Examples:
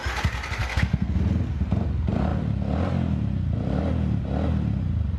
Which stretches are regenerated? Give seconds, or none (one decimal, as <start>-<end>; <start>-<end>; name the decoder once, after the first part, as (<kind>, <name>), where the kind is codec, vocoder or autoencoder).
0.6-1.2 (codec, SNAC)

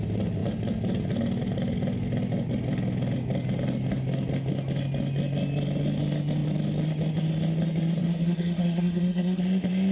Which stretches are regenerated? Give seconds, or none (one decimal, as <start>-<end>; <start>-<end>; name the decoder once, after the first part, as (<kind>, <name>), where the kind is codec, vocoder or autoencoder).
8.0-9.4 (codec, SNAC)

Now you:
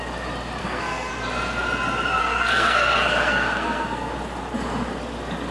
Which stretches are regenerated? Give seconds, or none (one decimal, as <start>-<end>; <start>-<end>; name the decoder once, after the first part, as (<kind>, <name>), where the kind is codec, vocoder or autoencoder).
0.6-1.1 (codec, SNAC); 2.2-4.1

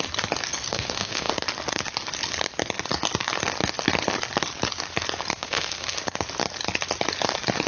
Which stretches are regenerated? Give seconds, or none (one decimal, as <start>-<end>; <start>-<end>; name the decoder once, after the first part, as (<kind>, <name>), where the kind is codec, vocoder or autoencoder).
0.7-1.3 (codec, SNAC); 5.3-6.0